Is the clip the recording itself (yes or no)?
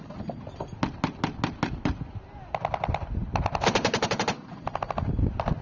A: yes